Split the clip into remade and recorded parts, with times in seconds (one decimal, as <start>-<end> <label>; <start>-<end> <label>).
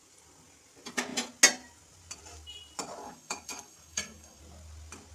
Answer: 0.0-3.0 recorded; 3.0-4.4 remade; 4.4-5.1 recorded